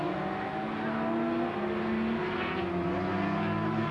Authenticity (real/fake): real